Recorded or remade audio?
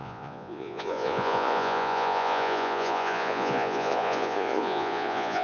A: remade